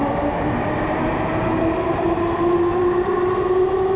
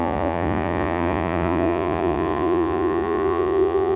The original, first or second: first